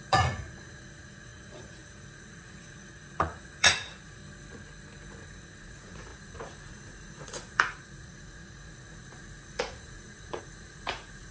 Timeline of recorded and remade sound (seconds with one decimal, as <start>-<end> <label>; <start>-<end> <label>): 0.0-4.2 remade; 4.2-5.4 recorded; 5.4-11.3 remade

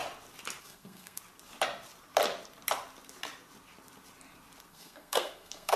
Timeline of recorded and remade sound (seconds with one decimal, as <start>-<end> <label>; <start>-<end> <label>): 0.0-0.6 recorded; 0.6-1.2 remade; 1.2-4.7 recorded; 4.7-5.8 remade

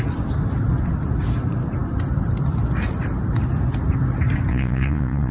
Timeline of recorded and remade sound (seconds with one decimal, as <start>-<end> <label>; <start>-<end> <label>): 0.0-4.5 recorded; 4.5-5.3 remade

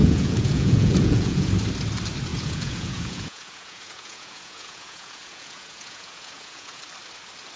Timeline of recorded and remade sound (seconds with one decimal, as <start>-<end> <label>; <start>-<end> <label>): 0.0-1.5 remade; 1.5-2.3 recorded; 2.3-6.8 remade; 6.8-7.6 recorded

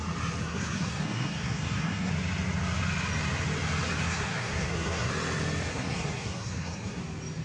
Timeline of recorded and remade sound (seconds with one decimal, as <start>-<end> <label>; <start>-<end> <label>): 0.0-0.4 recorded; 0.4-2.1 remade; 2.1-4.0 recorded; 4.0-5.1 remade; 5.1-5.7 recorded; 5.7-7.0 remade; 7.0-7.4 recorded